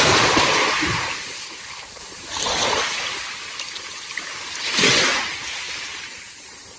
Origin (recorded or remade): recorded